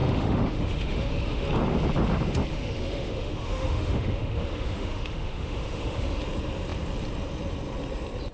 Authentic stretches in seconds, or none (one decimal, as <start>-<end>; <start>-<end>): 1.5-2.5; 6.2-8.3